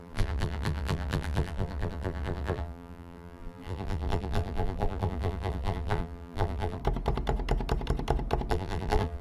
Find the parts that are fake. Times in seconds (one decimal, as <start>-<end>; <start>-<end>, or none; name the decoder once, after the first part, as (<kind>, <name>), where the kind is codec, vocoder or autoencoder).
0.0-6.8 (vocoder, BigVGAN v2); 8.5-9.2